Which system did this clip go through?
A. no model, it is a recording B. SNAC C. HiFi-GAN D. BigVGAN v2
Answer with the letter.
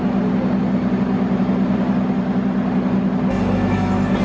A